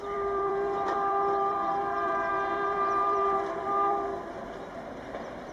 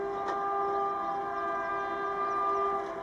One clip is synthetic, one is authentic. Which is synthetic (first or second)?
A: first